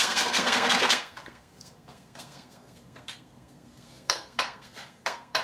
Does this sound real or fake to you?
fake